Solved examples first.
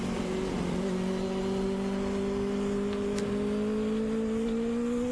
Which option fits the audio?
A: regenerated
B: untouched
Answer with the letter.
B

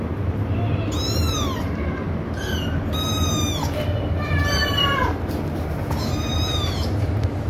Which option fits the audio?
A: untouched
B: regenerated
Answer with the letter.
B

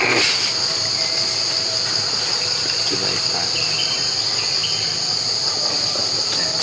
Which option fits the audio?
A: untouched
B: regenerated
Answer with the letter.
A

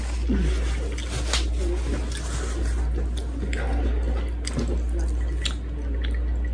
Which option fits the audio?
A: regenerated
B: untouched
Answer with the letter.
B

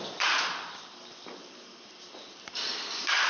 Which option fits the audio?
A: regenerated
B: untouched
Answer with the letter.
A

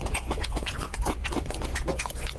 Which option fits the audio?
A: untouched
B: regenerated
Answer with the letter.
B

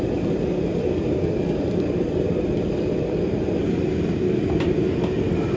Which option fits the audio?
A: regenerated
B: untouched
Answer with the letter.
B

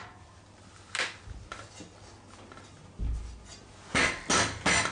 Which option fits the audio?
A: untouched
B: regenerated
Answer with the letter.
A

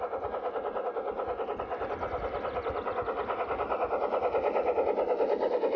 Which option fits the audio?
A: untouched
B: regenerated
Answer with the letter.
A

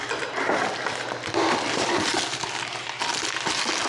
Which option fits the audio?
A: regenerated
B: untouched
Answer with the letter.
B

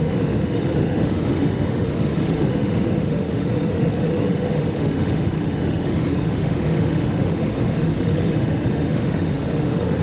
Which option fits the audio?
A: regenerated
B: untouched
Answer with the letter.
A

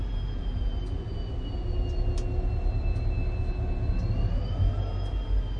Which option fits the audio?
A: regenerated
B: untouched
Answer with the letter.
B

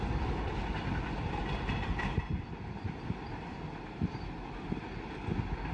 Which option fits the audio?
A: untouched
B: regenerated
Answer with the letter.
A